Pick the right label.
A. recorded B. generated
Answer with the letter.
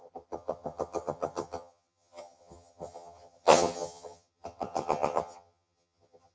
B